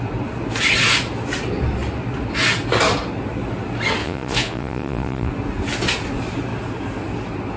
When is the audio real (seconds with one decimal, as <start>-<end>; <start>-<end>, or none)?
0.0-4.0; 5.3-7.6